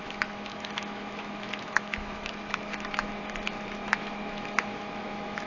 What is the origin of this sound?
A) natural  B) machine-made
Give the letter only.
B